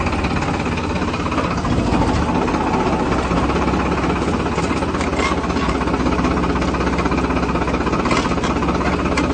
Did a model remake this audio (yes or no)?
no